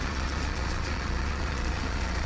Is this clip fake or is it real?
fake